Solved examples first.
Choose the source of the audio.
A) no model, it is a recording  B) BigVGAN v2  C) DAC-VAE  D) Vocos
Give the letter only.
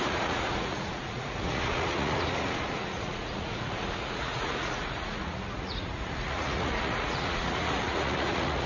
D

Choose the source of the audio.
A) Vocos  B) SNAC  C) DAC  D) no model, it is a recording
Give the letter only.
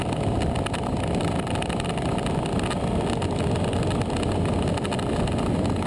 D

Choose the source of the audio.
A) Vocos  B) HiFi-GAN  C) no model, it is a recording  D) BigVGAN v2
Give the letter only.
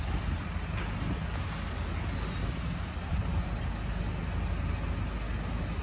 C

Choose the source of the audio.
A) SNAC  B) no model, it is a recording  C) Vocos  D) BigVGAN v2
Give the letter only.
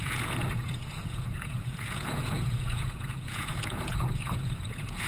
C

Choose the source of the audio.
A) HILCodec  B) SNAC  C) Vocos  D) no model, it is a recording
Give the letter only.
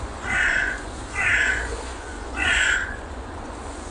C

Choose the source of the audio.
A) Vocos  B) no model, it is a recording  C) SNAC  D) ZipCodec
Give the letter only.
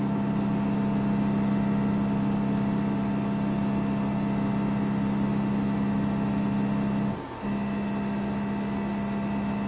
B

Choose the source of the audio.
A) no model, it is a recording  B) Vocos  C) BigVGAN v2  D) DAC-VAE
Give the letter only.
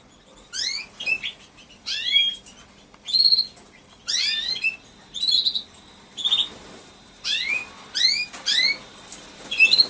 A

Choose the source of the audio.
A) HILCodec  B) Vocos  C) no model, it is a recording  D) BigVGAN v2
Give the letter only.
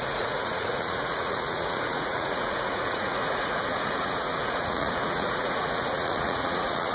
B